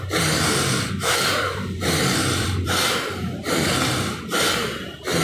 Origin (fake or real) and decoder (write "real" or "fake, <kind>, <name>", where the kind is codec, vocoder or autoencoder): fake, vocoder, BigVGAN v2